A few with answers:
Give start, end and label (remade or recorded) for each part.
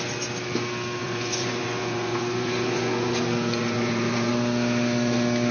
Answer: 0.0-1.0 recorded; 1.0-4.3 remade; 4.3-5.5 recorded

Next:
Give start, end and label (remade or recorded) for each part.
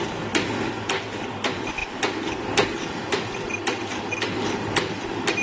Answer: 0.0-5.4 recorded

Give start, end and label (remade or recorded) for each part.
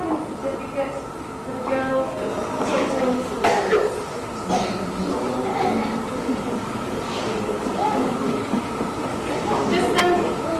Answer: 0.0-2.7 recorded; 2.7-3.9 remade; 3.9-5.5 recorded; 5.5-8.6 remade; 8.6-9.1 recorded; 9.1-9.7 remade; 9.7-10.6 recorded